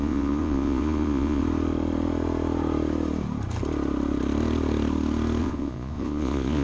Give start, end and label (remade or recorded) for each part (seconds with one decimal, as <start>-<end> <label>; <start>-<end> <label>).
0.0-1.4 remade; 1.4-5.4 recorded; 5.4-6.6 remade